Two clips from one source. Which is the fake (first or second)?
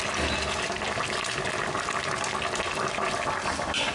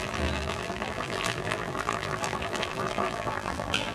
second